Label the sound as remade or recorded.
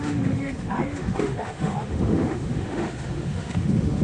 remade